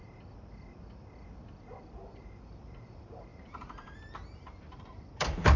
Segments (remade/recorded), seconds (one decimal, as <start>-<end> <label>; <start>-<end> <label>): 0.0-1.8 recorded; 1.8-5.6 remade

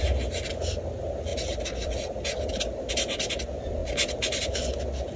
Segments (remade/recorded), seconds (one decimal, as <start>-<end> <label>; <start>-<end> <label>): 0.0-5.2 recorded

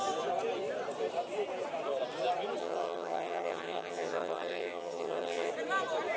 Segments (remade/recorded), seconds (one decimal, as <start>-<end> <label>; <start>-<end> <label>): 0.0-2.6 recorded; 2.6-5.5 remade; 5.5-6.2 recorded

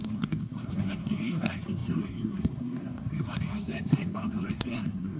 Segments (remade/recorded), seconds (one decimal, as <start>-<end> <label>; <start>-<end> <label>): 0.0-5.2 remade